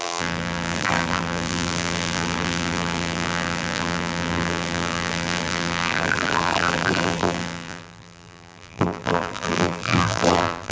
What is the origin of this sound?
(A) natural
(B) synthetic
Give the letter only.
B